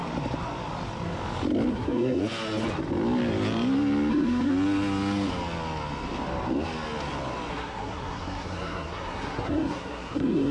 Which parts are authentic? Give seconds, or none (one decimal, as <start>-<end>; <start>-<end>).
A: 0.0-1.7; 2.2-4.1; 4.5-7.5